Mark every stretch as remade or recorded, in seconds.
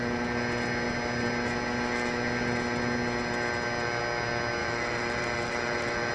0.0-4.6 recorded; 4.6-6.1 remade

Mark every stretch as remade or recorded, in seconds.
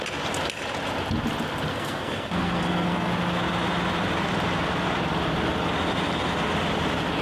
0.0-1.7 recorded; 1.7-3.1 remade; 3.1-7.2 recorded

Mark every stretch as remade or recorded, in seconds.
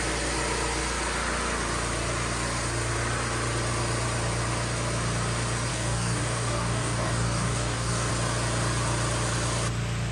0.0-5.7 recorded; 5.7-8.1 remade; 8.1-10.1 recorded